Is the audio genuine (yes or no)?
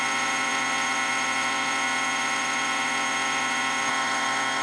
no